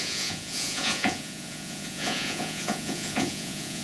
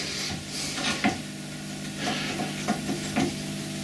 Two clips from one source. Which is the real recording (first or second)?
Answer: second